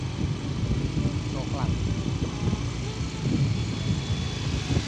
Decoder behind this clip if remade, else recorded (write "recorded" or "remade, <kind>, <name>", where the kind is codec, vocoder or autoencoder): recorded